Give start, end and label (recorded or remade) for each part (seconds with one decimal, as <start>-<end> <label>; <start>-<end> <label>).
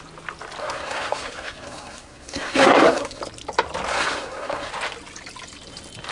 0.0-0.6 recorded; 0.6-3.2 remade; 3.2-3.9 recorded; 3.9-4.7 remade; 4.7-6.1 recorded